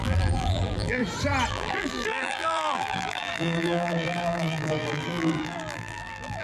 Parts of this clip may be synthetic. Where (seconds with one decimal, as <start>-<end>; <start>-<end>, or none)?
0.0-1.0; 1.5-6.4